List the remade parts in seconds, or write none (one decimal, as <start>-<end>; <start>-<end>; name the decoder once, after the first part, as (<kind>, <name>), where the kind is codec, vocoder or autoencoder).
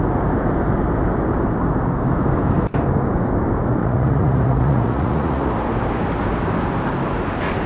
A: 3.8-5.5 (vocoder, Vocos)